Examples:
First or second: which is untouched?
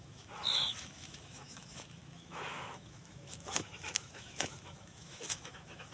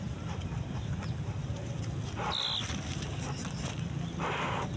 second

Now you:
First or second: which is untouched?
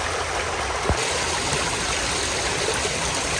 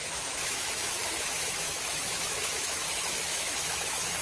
first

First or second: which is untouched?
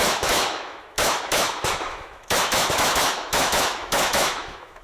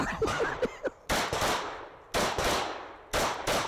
second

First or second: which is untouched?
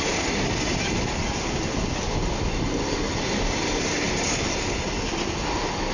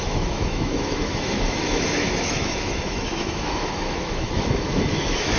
first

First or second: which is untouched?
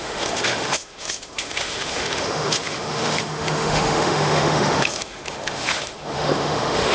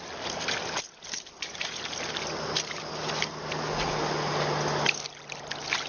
second